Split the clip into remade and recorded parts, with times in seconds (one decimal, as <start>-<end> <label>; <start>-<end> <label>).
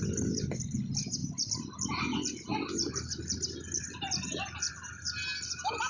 0.0-5.9 recorded